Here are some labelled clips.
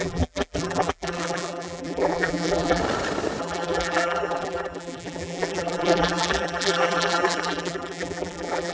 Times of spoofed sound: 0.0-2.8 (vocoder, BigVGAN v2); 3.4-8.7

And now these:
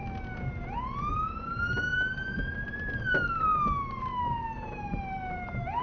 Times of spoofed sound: 1.1-1.9 (vocoder, BigVGAN v2); 2.7-3.5; 4.7-5.8

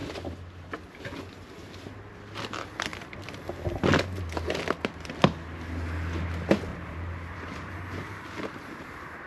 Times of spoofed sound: 6.7-9.3 (vocoder, BigVGAN v2)